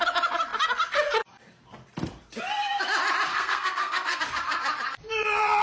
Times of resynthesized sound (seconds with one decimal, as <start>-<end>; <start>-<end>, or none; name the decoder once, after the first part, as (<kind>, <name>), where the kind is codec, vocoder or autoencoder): 3.3-4.2 (codec, SNAC)